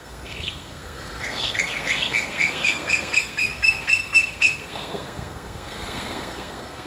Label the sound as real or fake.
fake